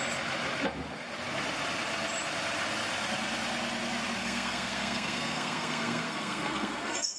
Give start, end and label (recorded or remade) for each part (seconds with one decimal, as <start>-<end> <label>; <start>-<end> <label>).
0.0-4.2 recorded; 4.2-7.2 remade